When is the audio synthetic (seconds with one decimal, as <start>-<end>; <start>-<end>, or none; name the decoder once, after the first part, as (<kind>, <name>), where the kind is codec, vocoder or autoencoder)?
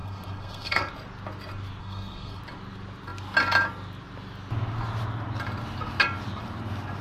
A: 0.0-0.9 (codec, SNAC); 1.8-2.4